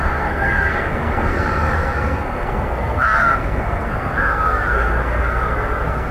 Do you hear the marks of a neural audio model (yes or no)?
yes